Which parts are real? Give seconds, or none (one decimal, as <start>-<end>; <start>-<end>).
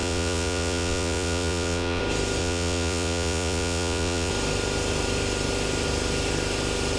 2.0-2.4; 4.3-7.0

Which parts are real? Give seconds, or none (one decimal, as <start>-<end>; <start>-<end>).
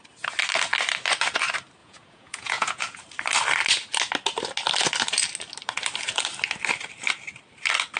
0.0-1.8; 3.0-8.0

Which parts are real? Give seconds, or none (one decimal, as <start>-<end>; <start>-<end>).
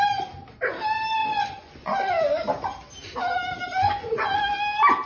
0.0-1.2; 2.1-3.8; 4.4-5.1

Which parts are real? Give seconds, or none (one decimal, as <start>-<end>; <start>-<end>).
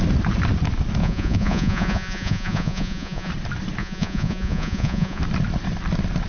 0.0-1.0; 3.3-3.8; 5.2-6.3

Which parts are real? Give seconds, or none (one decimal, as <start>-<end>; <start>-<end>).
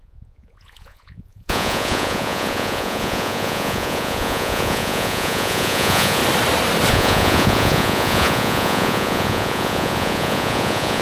6.2-6.9